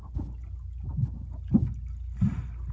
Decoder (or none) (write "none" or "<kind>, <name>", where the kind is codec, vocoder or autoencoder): none